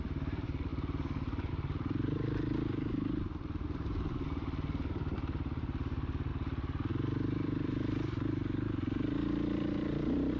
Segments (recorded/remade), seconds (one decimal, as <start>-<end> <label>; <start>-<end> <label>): 0.0-0.7 remade; 0.7-1.5 recorded; 1.5-6.3 remade; 6.3-6.9 recorded; 6.9-10.4 remade